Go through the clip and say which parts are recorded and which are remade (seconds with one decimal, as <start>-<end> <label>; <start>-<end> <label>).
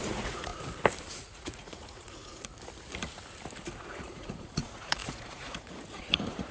0.0-0.5 remade; 0.5-1.1 recorded; 1.1-2.5 remade; 2.5-3.8 recorded; 3.8-6.5 remade